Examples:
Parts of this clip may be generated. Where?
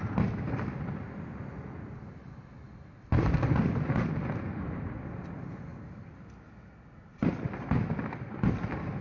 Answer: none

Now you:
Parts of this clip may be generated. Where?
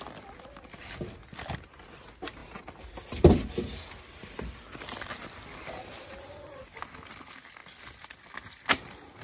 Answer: none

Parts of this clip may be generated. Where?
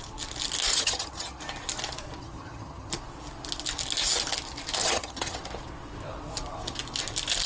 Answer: 0.7-1.4 (vocoder, HiFi-GAN); 2.2-2.9; 4.8-5.4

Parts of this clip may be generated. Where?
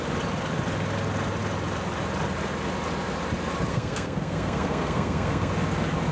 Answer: 3.7-5.5 (codec, SNAC)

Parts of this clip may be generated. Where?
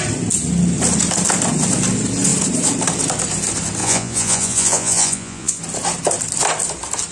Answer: 3.8-5.6 (vocoder, Vocos)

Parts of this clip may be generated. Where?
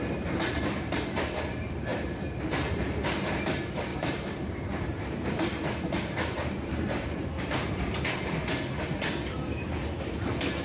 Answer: 1.9-2.4 (vocoder, BigVGAN v2); 3.9-7.3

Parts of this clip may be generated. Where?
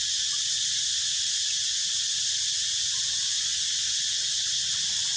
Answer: none